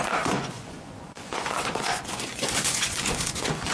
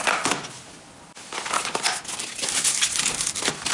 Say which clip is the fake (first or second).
first